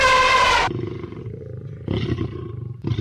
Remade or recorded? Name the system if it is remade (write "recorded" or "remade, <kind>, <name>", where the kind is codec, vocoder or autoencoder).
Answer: remade, vocoder, BigVGAN v2